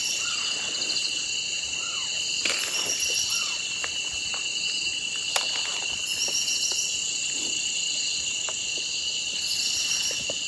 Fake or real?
real